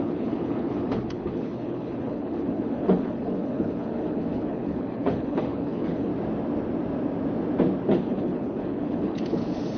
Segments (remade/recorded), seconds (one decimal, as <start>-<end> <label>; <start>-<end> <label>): 0.0-6.1 remade; 6.1-7.9 recorded; 7.9-9.8 remade